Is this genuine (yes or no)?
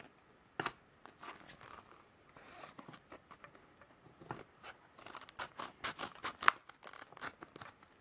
yes